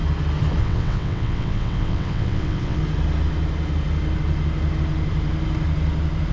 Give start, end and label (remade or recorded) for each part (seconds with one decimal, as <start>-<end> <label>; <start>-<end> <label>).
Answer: 0.0-0.6 recorded; 0.6-2.8 remade; 2.8-6.3 recorded